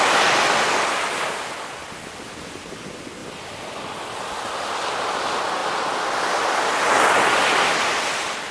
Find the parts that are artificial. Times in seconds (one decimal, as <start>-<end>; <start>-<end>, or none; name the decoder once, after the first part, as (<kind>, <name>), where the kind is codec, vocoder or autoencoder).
none